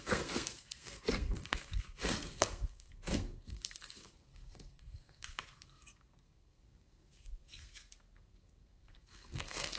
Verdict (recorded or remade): remade